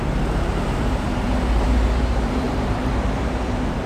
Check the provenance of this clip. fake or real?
fake